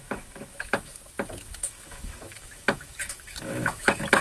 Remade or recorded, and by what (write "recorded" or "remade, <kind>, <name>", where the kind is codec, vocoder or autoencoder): remade, autoencoder, DAC-VAE